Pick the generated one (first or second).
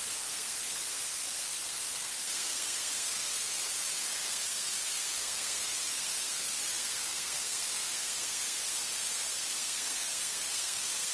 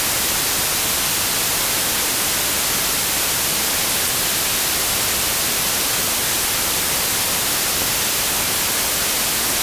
first